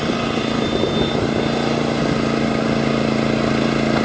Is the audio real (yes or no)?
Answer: yes